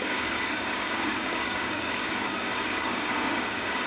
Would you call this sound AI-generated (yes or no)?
yes